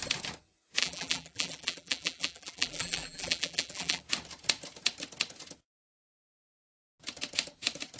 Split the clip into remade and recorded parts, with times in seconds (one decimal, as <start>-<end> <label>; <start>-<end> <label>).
0.0-0.8 recorded; 0.8-4.0 remade; 4.0-8.0 recorded

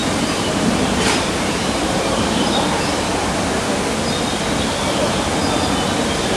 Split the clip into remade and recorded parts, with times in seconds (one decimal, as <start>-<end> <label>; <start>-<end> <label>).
0.0-3.1 remade; 3.1-6.4 recorded

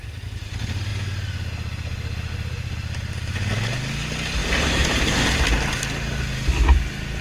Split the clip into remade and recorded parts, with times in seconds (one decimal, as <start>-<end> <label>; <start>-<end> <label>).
0.0-4.4 recorded; 4.4-5.0 remade; 5.0-7.2 recorded

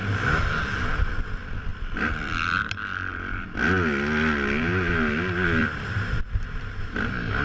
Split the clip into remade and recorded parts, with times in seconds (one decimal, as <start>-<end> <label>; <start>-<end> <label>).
0.0-1.7 recorded; 1.7-3.1 remade; 3.1-5.6 recorded; 5.6-6.2 remade; 6.2-7.4 recorded